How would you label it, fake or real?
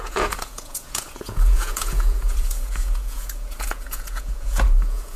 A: fake